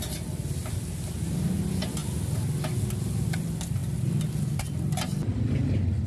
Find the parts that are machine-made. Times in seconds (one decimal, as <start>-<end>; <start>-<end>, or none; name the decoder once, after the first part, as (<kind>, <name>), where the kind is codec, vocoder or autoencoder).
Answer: none